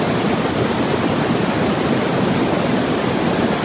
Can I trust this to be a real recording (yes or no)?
yes